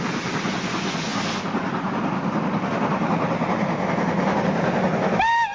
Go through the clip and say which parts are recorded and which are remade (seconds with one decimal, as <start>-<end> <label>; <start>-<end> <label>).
0.0-5.5 recorded